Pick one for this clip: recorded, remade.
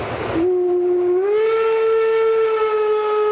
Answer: recorded